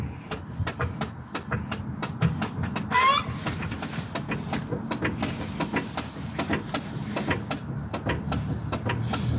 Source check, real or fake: real